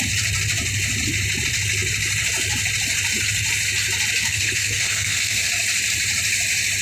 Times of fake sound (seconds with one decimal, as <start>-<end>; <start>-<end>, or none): 4.2-5.5